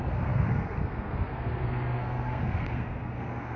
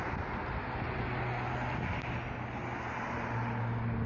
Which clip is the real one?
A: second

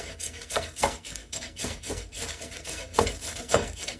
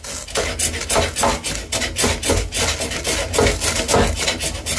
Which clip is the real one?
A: second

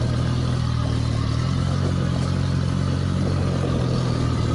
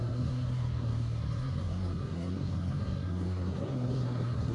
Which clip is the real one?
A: first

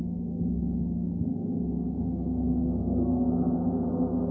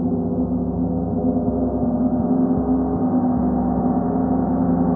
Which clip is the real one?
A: second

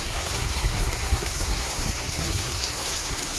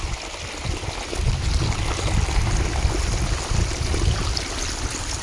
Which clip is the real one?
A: second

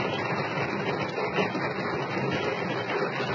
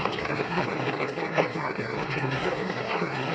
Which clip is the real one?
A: first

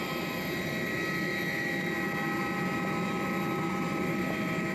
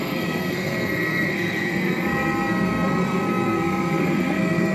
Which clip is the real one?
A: first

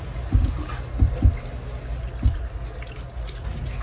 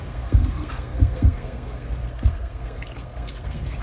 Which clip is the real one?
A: first